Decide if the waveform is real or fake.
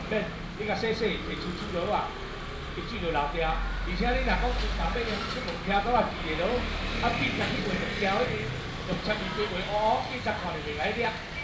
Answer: real